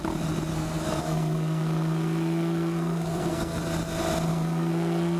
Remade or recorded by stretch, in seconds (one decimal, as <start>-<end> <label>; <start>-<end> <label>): 0.0-0.5 recorded; 0.5-3.6 remade; 3.6-4.3 recorded; 4.3-5.2 remade